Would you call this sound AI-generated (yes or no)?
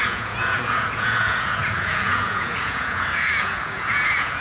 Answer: yes